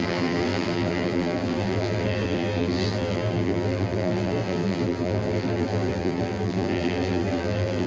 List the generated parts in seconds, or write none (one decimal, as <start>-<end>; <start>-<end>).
0.0-7.9